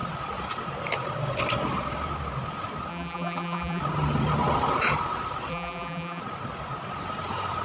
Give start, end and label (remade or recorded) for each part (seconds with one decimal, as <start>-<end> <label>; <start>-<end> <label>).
0.0-2.9 recorded; 2.9-3.8 remade; 3.8-5.5 recorded; 5.5-6.2 remade; 6.2-7.6 recorded